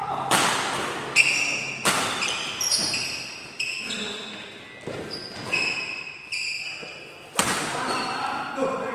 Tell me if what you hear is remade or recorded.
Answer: recorded